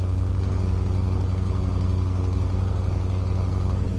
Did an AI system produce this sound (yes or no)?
yes